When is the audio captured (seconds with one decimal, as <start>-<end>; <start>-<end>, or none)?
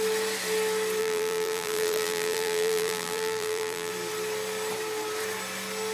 0.0-1.0; 3.9-5.9